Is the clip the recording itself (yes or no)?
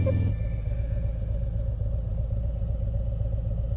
yes